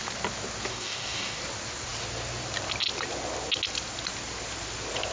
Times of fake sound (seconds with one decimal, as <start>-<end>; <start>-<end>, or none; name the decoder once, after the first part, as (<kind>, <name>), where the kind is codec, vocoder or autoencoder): 0.7-1.4 (codec, DAC)